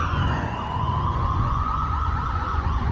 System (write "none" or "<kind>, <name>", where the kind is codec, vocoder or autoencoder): vocoder, Vocos